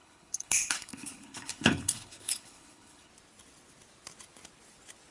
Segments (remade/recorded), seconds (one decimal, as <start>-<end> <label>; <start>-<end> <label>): 0.0-3.1 remade; 3.1-5.1 recorded